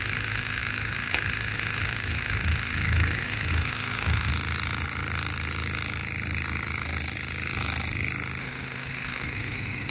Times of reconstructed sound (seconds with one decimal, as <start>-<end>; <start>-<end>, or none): 0.0-4.3; 8.4-9.9